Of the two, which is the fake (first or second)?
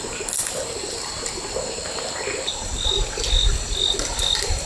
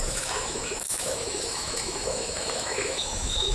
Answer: second